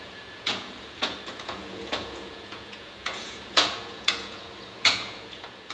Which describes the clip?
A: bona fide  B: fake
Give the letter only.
B